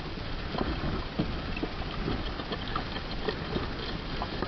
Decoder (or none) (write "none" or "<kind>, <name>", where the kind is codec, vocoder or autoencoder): none